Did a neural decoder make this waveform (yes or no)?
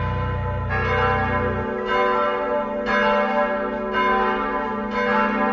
no